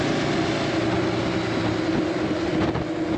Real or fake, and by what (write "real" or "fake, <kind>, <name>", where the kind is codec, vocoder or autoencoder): real